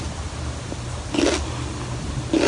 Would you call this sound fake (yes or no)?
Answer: no